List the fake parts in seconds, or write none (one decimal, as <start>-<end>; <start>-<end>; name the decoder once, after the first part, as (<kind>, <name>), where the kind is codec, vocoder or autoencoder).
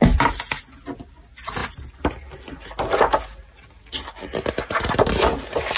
none